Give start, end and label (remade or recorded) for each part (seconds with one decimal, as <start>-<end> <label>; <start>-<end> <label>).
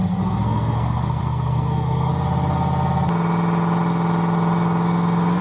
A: 0.0-2.1 remade; 2.1-5.4 recorded